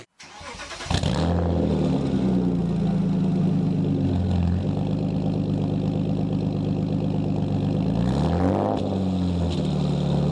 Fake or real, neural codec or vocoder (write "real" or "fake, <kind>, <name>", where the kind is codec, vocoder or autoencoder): real